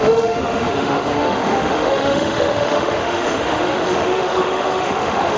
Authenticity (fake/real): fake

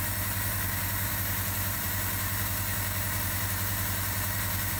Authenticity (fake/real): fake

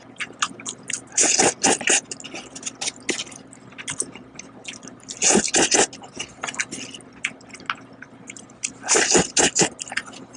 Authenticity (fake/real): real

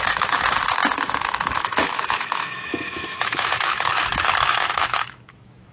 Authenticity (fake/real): fake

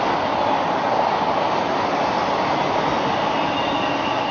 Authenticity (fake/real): real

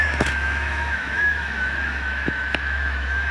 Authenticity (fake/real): fake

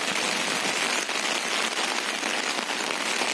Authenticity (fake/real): real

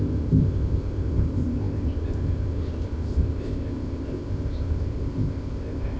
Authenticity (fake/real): fake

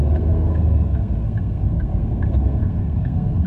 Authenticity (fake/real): fake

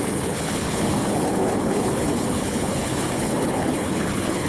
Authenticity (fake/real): fake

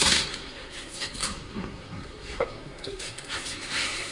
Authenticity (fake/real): fake